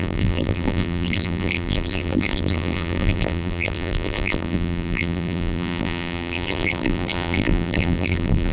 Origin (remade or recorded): remade